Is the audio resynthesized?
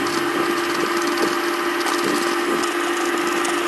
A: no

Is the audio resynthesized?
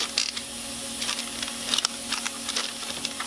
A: no